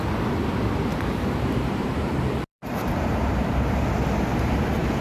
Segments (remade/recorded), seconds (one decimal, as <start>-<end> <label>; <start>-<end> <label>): 0.0-0.9 recorded; 0.9-3.8 remade; 3.8-5.0 recorded